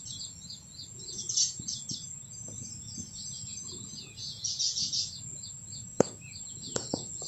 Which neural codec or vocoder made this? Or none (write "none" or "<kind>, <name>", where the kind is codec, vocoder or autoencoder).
vocoder, Vocos